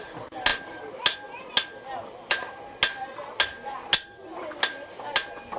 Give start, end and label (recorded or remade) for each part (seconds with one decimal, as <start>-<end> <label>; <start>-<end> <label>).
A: 0.0-5.6 recorded